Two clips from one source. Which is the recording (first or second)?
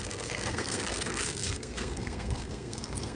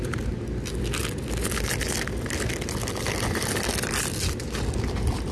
second